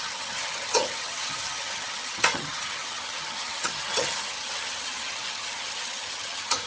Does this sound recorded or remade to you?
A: remade